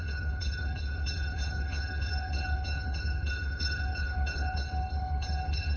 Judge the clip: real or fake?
fake